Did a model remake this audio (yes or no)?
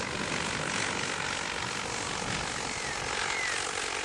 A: no